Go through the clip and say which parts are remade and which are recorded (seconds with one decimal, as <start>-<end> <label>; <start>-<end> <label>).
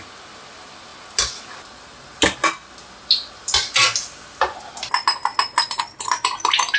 0.0-6.8 recorded